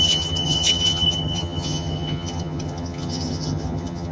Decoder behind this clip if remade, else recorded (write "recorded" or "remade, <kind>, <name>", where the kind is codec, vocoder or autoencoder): remade, vocoder, HiFi-GAN